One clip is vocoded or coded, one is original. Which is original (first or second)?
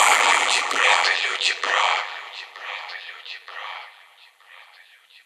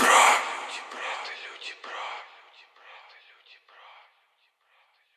second